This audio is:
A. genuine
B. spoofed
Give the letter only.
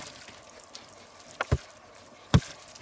A